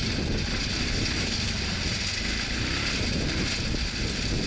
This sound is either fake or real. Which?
real